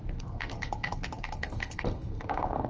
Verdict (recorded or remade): remade